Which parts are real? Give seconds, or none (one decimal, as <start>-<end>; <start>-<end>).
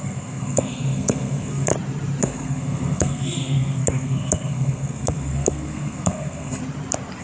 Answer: 1.7-2.2; 6.6-7.2